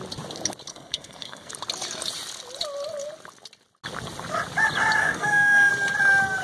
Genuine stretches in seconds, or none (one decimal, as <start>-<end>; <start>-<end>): 0.0-0.7; 1.5-5.0; 5.7-6.4